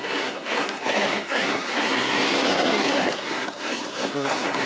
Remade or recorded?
remade